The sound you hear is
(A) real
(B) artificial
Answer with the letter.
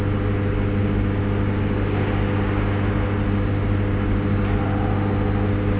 A